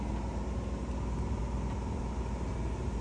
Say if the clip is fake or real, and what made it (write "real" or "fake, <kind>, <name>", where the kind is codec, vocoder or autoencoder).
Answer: real